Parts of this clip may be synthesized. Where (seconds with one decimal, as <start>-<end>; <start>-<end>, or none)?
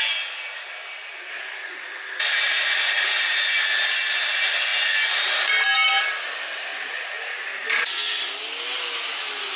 1.3-2.2; 6.7-7.3